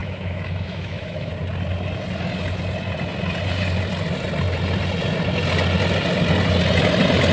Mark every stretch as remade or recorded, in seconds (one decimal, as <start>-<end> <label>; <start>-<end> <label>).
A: 0.0-1.3 remade; 1.3-7.3 recorded